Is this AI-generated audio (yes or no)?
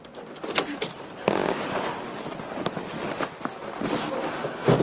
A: no